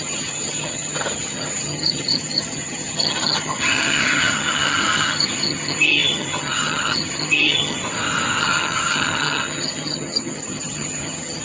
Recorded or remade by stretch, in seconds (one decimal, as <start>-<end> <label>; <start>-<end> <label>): 0.0-7.8 remade; 7.8-8.4 recorded; 8.4-11.4 remade